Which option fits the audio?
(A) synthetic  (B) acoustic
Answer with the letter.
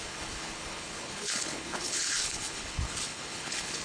A